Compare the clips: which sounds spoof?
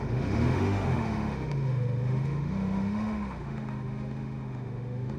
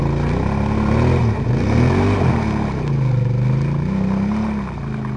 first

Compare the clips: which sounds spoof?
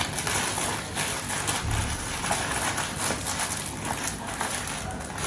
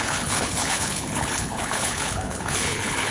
second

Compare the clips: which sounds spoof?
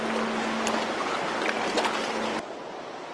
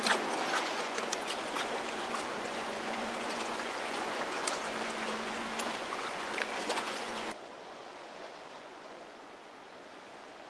second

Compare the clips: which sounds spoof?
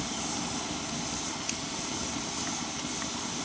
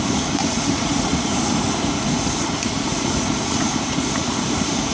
second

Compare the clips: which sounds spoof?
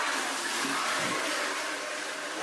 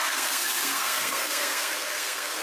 second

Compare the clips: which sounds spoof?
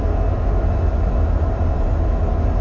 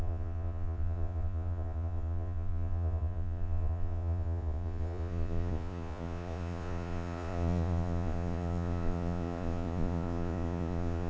second